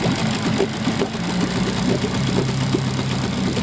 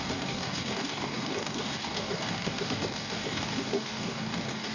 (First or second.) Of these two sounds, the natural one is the first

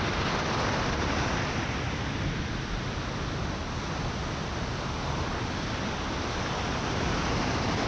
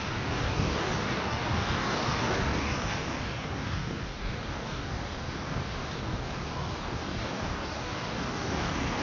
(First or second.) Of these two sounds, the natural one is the first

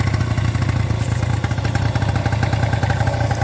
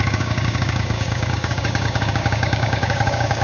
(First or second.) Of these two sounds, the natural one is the first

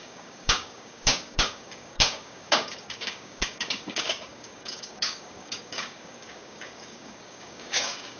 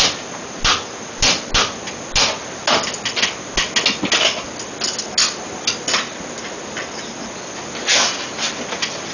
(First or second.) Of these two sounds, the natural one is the second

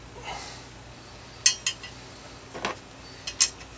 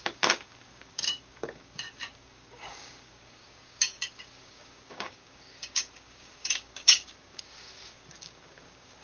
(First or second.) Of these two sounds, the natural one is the first